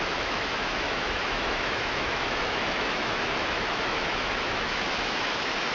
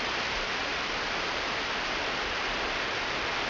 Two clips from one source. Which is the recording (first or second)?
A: second